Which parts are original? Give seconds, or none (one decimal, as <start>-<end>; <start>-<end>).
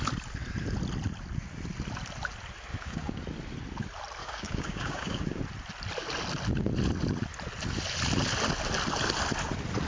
0.0-2.7; 3.2-4.2; 5.4-9.9